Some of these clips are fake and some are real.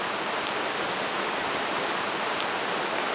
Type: real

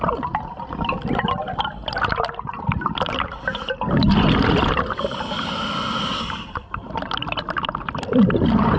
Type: real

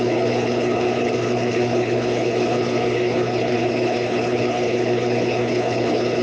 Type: fake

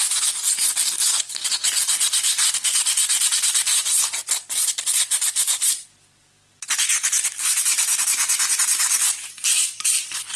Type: real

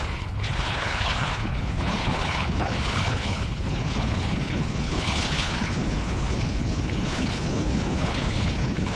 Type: fake